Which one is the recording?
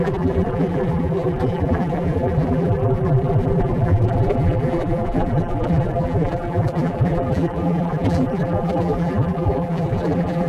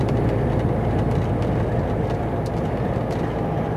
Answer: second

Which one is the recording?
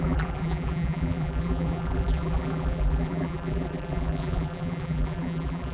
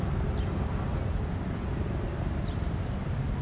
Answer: second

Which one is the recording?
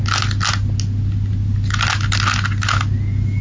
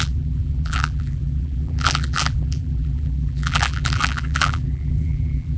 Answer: first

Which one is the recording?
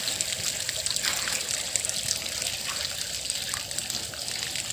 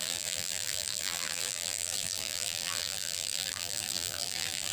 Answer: first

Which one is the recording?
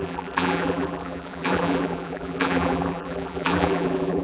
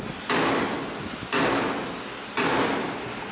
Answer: second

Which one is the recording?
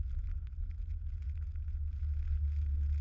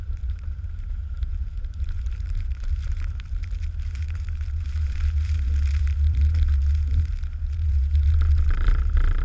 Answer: first